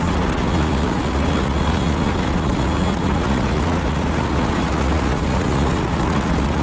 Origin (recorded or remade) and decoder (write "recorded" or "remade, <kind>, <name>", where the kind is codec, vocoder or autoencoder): remade, vocoder, Vocos